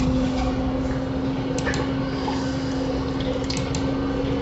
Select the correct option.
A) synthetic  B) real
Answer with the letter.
B